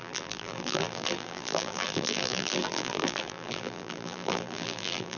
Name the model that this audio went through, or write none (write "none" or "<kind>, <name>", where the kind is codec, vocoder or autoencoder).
vocoder, BigVGAN v2